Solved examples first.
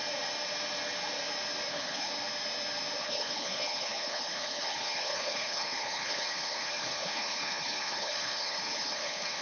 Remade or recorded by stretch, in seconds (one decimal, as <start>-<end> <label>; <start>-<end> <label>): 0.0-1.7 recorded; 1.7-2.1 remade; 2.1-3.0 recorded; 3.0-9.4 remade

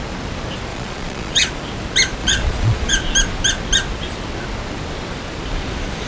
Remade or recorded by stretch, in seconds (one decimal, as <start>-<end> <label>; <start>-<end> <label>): 0.0-0.7 recorded; 0.7-1.5 remade; 1.5-2.2 recorded; 2.2-2.9 remade; 2.9-6.1 recorded

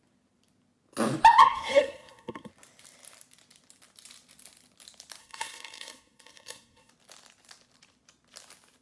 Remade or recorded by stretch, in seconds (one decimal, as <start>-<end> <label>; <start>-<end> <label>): 0.0-1.4 recorded; 1.4-2.5 remade; 2.5-5.2 recorded; 5.2-6.9 remade; 6.9-8.8 recorded

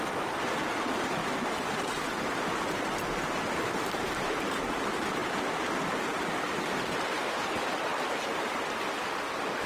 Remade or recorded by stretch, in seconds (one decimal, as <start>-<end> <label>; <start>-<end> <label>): 0.0-9.7 recorded

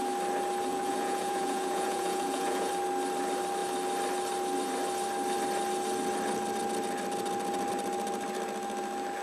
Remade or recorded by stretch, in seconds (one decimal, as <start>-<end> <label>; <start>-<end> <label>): 0.0-0.7 recorded; 0.7-2.7 remade; 2.7-9.2 recorded

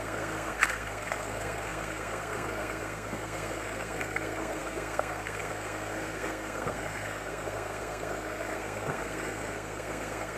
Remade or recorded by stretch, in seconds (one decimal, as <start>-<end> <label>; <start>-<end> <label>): 0.0-10.4 remade